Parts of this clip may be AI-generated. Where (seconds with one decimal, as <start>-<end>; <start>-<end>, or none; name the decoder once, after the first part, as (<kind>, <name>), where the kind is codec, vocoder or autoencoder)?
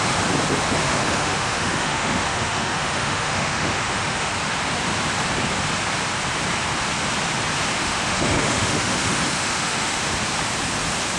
0.8-4.3 (autoencoder, DAC-VAE); 7.8-10.1